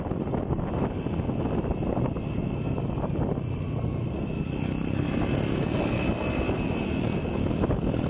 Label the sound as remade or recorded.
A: recorded